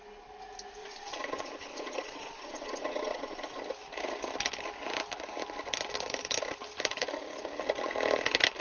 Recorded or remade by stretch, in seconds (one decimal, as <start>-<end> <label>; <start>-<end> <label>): 0.0-0.8 recorded; 0.8-3.6 remade; 3.6-8.6 recorded